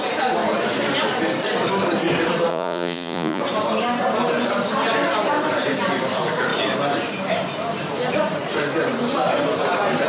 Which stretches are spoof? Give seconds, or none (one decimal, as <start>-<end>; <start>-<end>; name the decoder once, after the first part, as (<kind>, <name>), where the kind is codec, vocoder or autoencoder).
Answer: 2.5-3.4 (vocoder, Vocos)